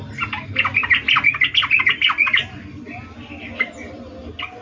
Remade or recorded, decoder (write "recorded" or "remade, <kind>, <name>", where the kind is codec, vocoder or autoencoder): recorded